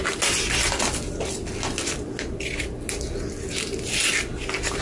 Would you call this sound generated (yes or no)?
no